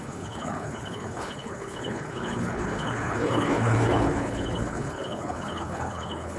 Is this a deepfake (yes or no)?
yes